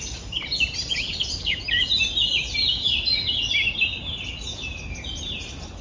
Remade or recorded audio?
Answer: recorded